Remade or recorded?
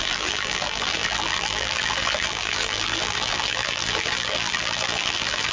remade